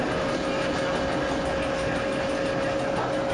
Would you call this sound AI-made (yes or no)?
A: no